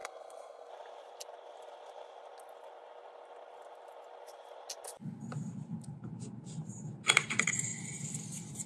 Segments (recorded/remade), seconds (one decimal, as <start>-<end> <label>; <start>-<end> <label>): 0.0-0.7 remade; 0.7-8.7 recorded